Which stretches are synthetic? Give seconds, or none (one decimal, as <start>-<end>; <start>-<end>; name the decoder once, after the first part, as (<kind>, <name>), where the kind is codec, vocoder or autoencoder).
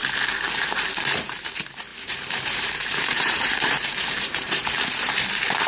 0.6-5.7 (vocoder, BigVGAN v2)